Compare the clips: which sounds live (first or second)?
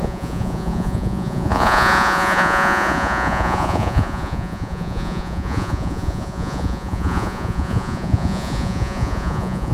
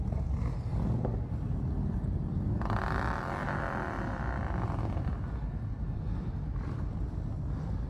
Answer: second